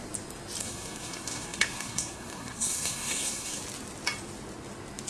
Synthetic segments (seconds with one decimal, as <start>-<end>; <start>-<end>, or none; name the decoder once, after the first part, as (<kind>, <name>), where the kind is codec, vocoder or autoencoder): 0.6-3.6 (codec, SNAC)